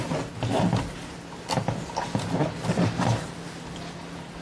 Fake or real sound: real